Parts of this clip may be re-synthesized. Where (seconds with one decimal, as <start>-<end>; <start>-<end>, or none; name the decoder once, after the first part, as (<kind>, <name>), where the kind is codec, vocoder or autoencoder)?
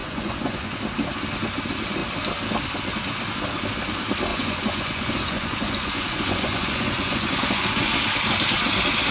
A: 0.0-0.8 (vocoder, Vocos); 4.3-7.9